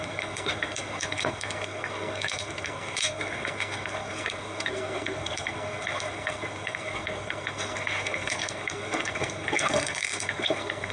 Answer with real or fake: fake